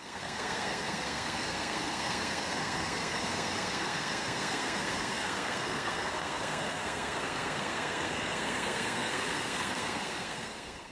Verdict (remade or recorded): remade